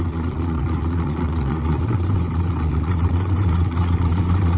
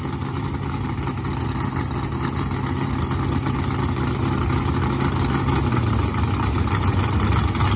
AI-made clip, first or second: first